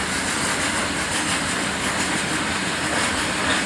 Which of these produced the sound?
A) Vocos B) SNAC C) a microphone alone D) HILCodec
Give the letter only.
C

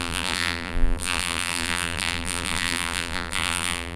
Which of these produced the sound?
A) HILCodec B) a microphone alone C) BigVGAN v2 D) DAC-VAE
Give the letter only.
C